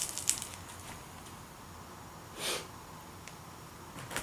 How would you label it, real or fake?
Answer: real